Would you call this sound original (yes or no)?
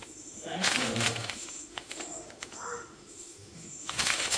no